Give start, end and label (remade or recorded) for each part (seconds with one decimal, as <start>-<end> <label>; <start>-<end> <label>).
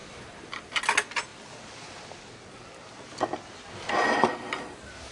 0.0-0.8 remade; 0.8-5.1 recorded